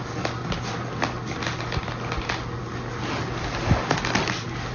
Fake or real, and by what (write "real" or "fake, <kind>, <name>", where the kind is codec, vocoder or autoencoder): real